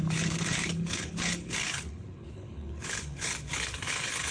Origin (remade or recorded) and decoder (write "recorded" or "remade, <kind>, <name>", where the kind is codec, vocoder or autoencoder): remade, codec, HILCodec